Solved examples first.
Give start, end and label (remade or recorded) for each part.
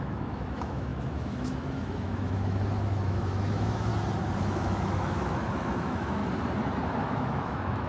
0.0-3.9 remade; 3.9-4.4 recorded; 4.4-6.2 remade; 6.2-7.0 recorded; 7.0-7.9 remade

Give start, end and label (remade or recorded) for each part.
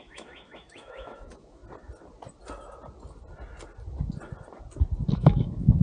0.0-1.6 remade; 1.6-5.1 recorded; 5.1-5.8 remade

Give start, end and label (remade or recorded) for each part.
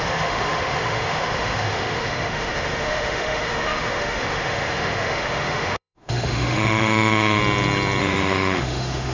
0.0-7.4 remade; 7.4-8.0 recorded; 8.0-9.1 remade